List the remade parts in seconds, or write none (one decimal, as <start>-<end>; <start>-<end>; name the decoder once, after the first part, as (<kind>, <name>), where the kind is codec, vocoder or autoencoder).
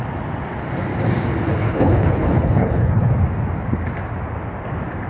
1.6-3.1 (codec, HILCodec)